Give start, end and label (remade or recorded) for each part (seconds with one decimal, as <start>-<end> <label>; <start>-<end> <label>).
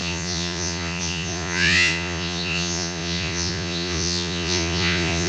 0.0-5.3 remade